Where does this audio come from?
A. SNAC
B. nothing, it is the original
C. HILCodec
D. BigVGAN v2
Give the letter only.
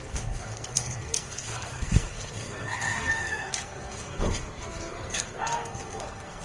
A